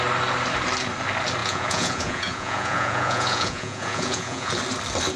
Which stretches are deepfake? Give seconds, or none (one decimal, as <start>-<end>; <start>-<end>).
1.4-4.5